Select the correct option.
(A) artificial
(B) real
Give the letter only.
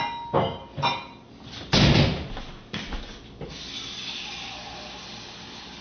B